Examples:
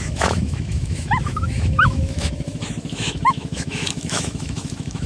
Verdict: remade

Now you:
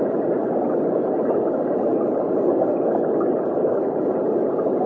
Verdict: recorded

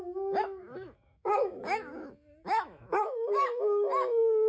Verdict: remade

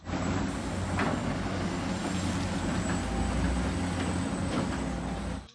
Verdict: recorded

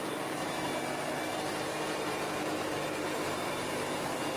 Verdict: recorded